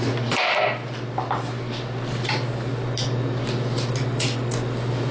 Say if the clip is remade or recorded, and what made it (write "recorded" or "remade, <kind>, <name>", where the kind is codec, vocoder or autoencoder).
recorded